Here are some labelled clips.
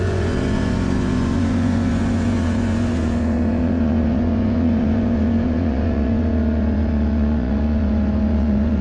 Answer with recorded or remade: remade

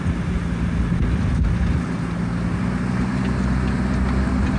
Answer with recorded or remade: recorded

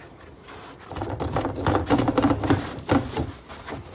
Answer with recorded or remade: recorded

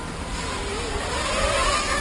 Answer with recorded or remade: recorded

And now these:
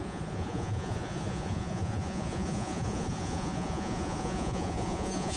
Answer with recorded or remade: remade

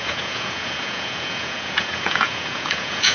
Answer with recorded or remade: remade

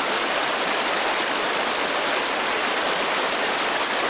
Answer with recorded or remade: recorded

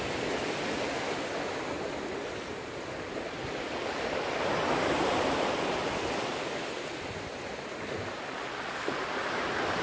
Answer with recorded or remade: recorded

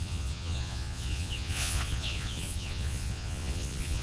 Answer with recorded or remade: remade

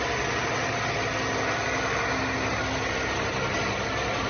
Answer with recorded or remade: recorded